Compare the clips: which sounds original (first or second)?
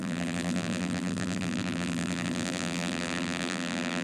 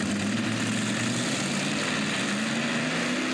second